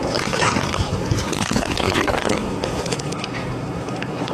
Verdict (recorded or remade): remade